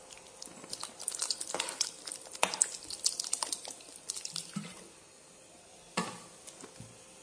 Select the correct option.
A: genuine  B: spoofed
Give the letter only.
A